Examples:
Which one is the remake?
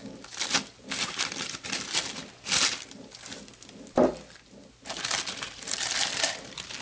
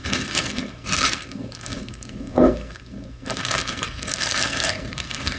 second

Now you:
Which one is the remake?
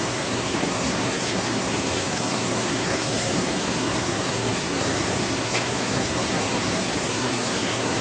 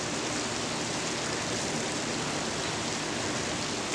first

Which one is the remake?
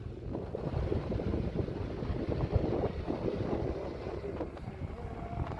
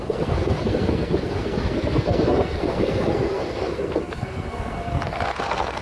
second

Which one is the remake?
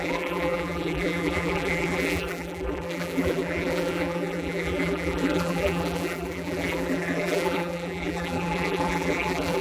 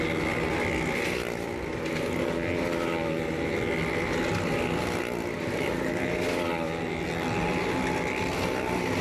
first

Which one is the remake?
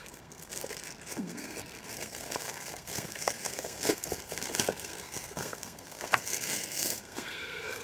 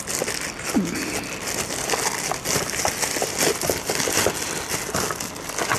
first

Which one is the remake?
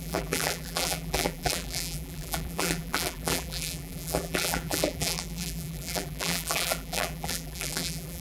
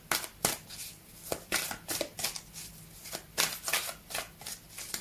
first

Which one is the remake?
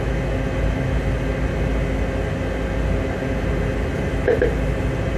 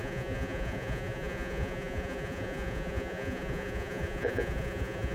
second